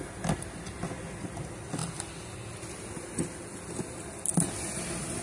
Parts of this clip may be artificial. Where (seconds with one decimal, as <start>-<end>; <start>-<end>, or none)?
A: none

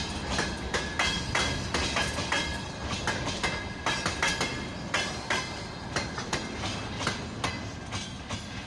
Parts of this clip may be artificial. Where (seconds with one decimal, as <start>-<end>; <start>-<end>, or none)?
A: none

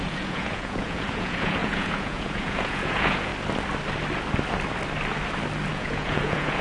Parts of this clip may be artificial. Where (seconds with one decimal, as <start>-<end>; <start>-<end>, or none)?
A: 0.0-3.3; 5.7-6.6

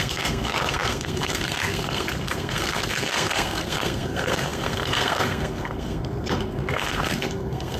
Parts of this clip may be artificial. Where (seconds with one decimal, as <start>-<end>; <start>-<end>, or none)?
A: 0.0-7.8